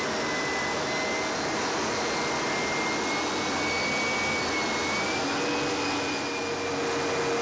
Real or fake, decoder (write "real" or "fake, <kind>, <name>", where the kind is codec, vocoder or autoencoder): real